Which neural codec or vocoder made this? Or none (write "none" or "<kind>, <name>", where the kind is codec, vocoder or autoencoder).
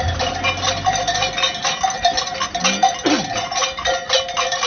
none